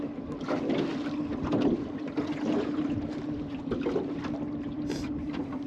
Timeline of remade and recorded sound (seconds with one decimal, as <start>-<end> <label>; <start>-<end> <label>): 0.0-5.7 recorded